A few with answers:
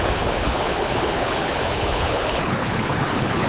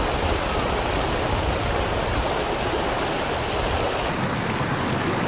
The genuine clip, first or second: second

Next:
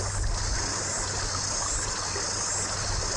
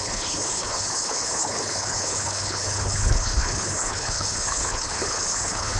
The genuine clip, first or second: first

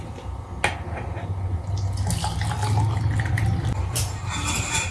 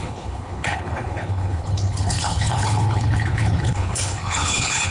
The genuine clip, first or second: first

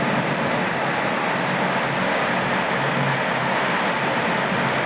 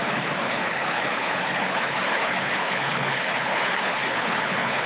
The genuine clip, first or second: first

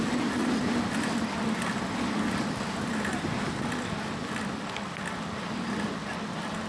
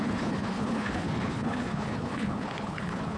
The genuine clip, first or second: first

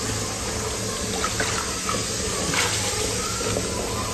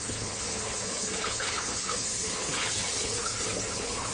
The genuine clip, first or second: first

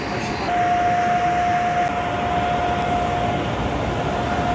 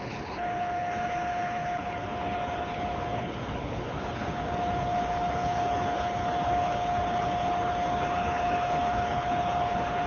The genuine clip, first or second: first